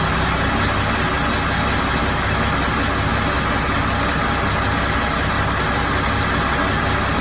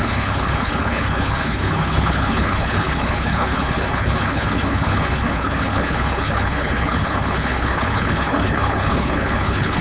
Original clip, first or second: first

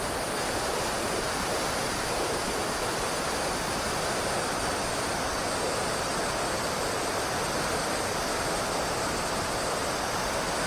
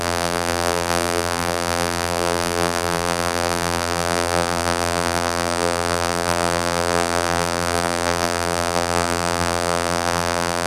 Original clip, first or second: first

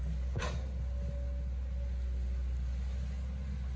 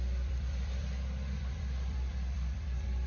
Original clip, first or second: first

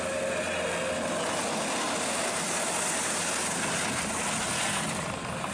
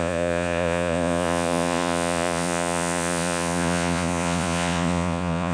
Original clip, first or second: first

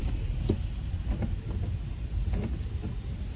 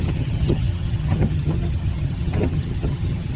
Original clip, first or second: first